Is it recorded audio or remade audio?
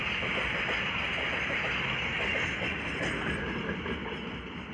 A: recorded